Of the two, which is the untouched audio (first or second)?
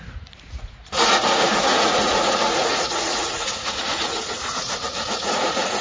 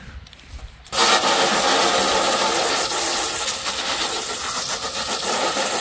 second